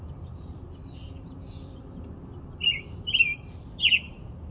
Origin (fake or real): real